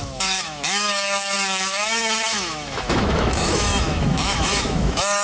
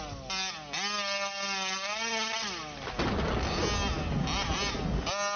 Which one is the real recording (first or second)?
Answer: second